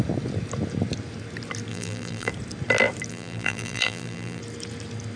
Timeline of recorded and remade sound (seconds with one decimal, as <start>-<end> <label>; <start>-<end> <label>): 0.0-1.7 recorded; 1.7-2.3 remade; 2.3-3.1 recorded; 3.1-4.4 remade; 4.4-5.2 recorded